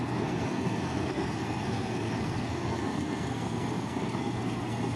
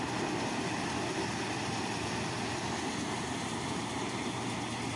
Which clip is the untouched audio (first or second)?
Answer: second